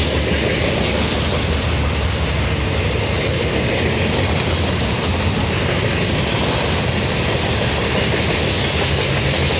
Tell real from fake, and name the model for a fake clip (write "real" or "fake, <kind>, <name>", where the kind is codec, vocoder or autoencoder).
real